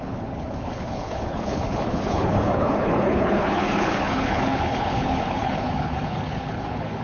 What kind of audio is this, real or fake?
fake